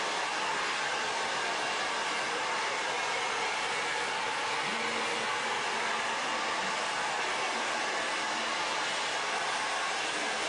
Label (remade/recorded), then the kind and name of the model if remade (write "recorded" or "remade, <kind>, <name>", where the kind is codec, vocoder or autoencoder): recorded